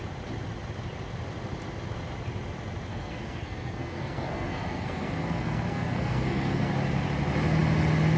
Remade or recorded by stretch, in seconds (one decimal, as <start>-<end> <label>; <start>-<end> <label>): 0.0-2.9 recorded; 2.9-6.7 remade; 6.7-8.2 recorded